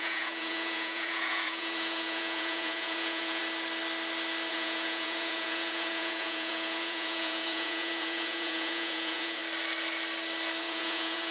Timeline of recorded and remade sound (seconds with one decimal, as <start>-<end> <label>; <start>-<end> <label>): 0.0-3.4 remade; 3.4-4.5 recorded; 4.5-9.4 remade; 9.4-10.6 recorded; 10.6-11.3 remade